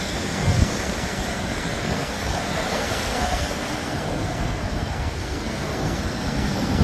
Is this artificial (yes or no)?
yes